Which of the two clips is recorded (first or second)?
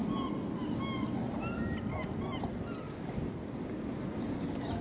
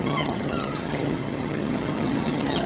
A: first